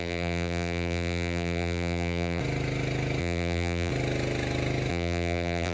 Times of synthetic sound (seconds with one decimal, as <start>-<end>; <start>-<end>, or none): 0.0-2.4; 3.2-3.9; 4.9-5.7